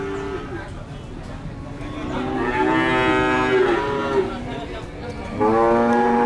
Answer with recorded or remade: recorded